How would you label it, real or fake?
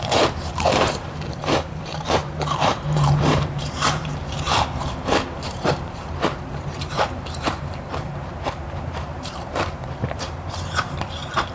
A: fake